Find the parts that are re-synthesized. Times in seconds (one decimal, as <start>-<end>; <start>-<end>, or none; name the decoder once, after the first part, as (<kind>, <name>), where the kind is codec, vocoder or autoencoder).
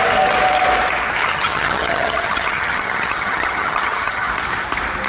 1.2-4.3 (vocoder, HiFi-GAN)